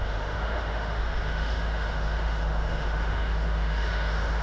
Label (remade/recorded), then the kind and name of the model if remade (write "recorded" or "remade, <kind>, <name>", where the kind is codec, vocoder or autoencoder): remade, autoencoder, DAC-VAE